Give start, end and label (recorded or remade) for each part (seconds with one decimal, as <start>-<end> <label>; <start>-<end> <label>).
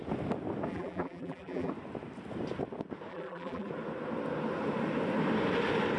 0.0-0.7 recorded; 0.7-1.7 remade; 1.7-3.1 recorded; 3.1-3.7 remade; 3.7-6.0 recorded